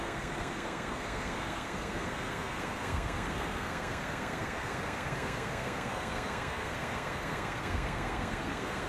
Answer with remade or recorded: remade